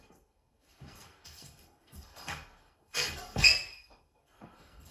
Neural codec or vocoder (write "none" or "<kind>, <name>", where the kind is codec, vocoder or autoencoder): codec, SNAC